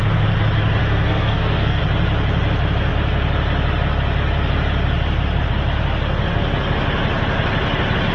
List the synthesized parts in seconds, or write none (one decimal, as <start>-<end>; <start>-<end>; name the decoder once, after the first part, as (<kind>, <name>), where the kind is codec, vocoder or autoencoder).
0.8-1.8 (codec, SNAC)